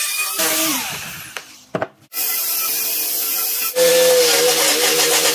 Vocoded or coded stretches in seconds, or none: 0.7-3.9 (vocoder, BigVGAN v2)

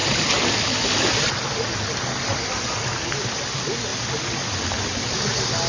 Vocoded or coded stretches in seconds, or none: none

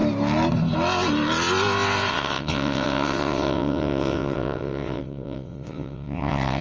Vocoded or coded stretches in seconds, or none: 2.1-6.6 (vocoder, WaveNeXt)

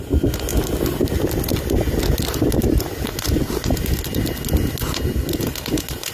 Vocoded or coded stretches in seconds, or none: none